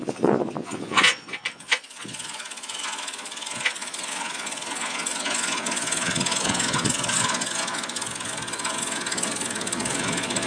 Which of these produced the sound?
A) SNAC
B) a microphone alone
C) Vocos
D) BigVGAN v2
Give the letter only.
C